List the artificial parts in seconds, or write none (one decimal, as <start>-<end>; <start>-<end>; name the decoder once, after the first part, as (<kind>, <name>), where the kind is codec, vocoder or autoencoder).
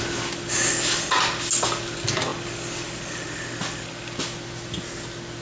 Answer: none